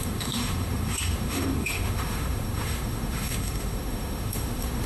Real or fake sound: fake